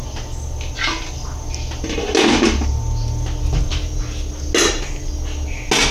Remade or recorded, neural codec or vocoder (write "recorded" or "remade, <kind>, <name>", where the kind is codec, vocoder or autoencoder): recorded